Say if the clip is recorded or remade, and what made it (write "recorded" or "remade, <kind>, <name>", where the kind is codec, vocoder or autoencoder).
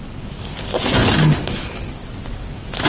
recorded